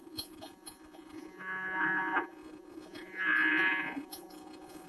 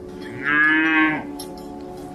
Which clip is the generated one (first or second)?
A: first